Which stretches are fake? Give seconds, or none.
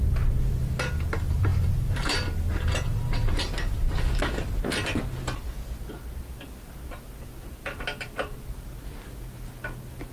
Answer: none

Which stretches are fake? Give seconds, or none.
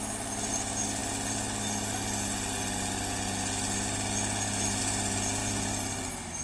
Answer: none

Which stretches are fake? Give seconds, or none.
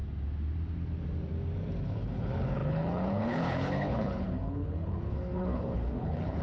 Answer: 1.8-6.4 (codec, HILCodec)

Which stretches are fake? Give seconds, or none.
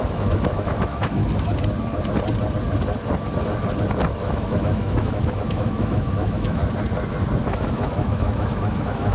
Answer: 0.0-1.2 (autoencoder, DAC-VAE); 4.2-6.6; 7.4-9.1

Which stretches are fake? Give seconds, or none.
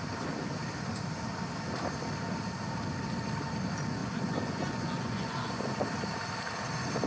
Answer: 4.0-5.6 (vocoder, Vocos)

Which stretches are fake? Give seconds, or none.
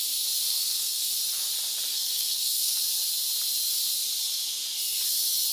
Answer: 0.5-1.1 (codec, SNAC); 1.9-2.8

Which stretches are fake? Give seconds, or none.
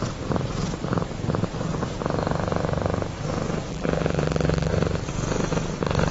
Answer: 3.7-4.7 (vocoder, BigVGAN v2)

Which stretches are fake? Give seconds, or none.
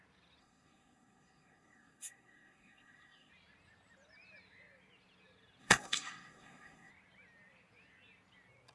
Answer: 0.4-3.3 (codec, SNAC); 5.6-6.9